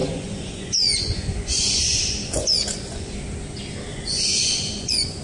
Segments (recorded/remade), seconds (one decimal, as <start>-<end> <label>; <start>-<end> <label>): 0.0-3.1 remade; 3.1-3.9 recorded; 3.9-5.2 remade

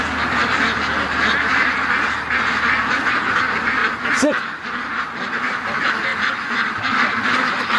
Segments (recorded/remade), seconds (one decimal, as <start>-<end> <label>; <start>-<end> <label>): 0.0-7.8 recorded

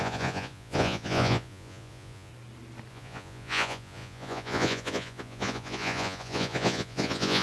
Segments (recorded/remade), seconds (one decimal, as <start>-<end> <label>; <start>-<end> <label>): 0.0-2.3 remade; 2.3-2.9 recorded; 2.9-7.4 remade

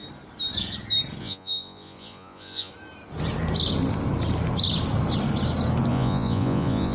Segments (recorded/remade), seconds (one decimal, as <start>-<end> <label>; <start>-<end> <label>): 0.0-1.2 recorded; 1.2-2.7 remade; 2.7-5.9 recorded; 5.9-6.9 remade

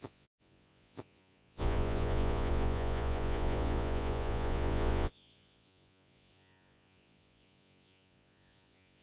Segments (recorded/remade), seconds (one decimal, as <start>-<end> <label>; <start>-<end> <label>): 0.0-9.0 remade

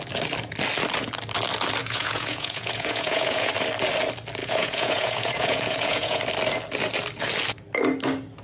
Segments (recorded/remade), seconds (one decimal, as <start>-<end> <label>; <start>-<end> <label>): 0.0-1.8 recorded; 1.8-3.5 remade; 3.5-4.4 recorded; 4.4-6.2 remade; 6.2-8.4 recorded

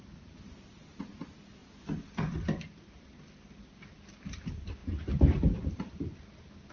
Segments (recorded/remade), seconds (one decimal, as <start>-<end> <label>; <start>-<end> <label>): 0.0-6.7 recorded

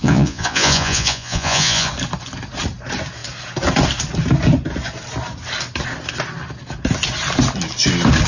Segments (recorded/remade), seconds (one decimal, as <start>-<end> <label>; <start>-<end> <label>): 0.0-1.9 remade; 1.9-8.3 recorded